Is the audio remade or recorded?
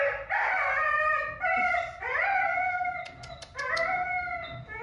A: recorded